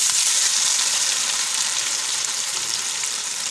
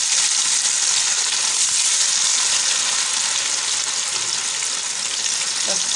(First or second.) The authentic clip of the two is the second